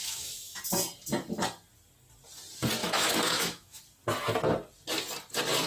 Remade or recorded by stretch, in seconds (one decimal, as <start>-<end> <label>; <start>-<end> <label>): 0.0-0.6 remade; 0.6-2.8 recorded; 2.8-3.8 remade; 3.8-5.7 recorded